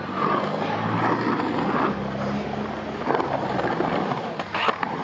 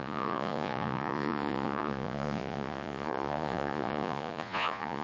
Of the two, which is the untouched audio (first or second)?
first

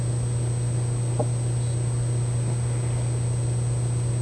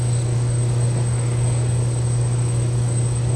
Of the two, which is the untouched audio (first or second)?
first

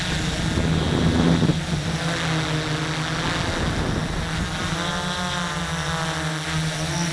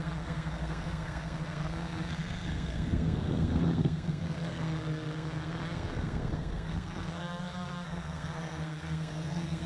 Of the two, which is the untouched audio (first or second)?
first